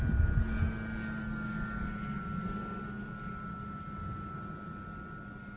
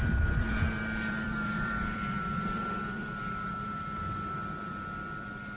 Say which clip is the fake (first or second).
second